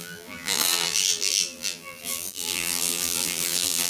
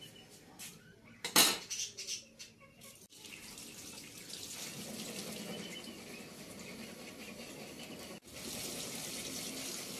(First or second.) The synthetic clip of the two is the first